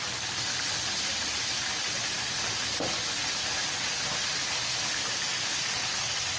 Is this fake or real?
real